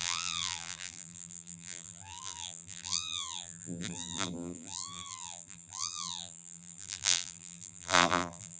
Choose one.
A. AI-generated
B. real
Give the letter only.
A